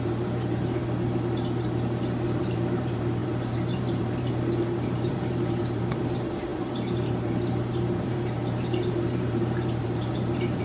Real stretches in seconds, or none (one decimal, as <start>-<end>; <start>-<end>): 0.8-2.4